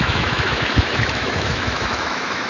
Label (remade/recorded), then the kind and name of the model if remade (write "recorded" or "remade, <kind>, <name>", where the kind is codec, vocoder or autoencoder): remade, autoencoder, DAC-VAE